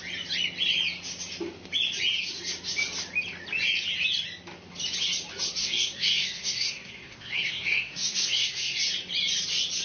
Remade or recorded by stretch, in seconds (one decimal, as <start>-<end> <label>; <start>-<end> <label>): 0.0-5.6 recorded; 5.6-8.8 remade; 8.8-9.8 recorded